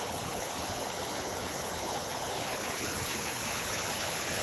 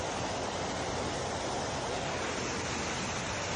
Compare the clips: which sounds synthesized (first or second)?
first